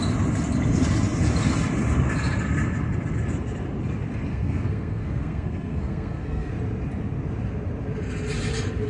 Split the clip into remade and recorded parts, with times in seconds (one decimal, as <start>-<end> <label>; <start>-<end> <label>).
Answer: 0.0-4.3 recorded; 4.3-6.5 remade; 6.5-8.9 recorded